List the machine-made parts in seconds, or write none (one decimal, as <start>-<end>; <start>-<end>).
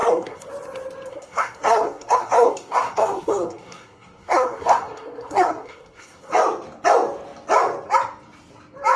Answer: 0.0-0.5; 1.1-6.3